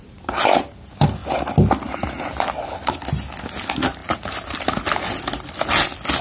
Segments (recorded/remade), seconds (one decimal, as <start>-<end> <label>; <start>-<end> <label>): 0.0-6.2 recorded